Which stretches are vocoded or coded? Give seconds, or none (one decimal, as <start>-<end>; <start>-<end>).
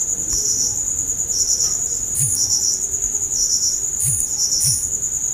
none